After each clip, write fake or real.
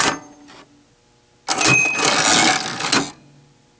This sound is real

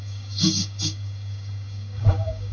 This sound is fake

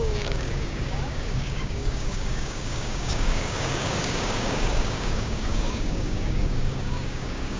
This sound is fake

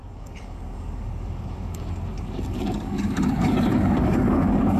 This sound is fake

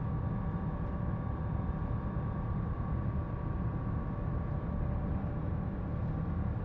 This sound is real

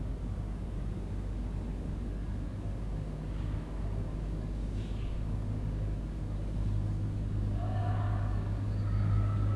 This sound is fake